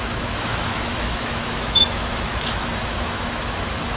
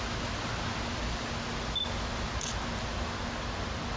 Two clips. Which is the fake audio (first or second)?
first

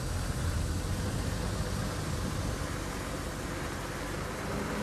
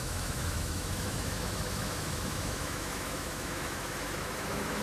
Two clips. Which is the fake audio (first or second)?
second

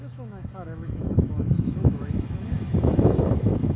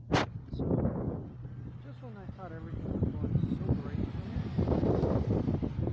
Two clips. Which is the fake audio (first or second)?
first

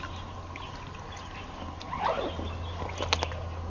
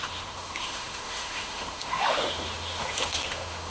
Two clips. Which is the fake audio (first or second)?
second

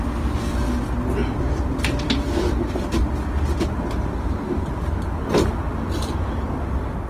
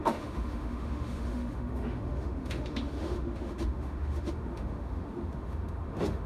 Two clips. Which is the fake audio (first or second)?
second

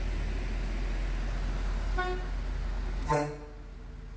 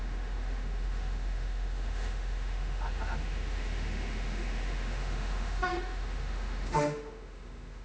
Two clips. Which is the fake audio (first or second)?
second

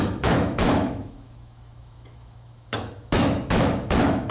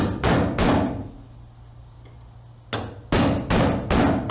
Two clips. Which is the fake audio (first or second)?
first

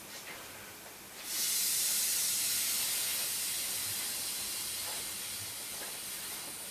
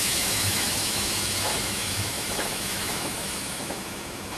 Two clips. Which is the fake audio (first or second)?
second